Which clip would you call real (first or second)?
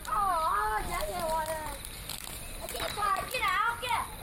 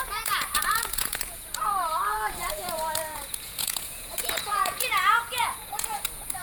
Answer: first